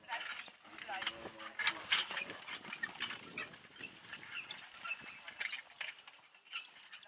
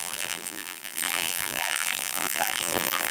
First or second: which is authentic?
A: first